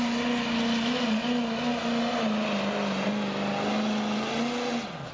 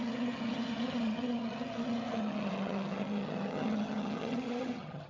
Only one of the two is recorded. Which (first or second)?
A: first